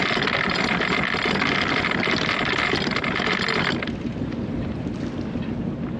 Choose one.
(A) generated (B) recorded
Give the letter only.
B